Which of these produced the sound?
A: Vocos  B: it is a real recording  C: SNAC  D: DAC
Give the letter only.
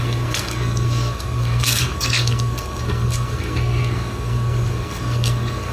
C